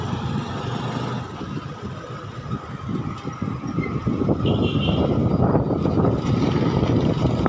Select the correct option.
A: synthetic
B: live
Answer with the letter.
B